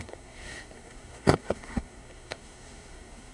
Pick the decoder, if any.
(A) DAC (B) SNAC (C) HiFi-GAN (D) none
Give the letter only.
B